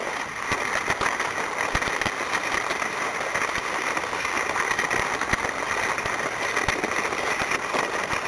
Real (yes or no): yes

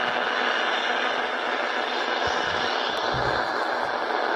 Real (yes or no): yes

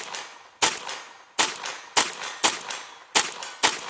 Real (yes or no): yes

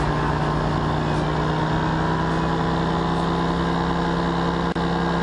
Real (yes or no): yes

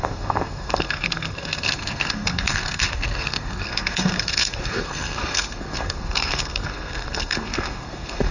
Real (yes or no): no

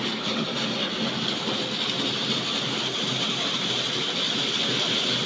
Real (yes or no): yes